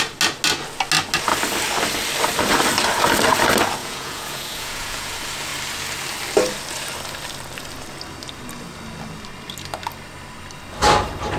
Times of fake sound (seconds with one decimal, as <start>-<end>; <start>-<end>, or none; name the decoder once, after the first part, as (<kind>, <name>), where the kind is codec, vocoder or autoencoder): 3.8-5.1 (vocoder, Vocos)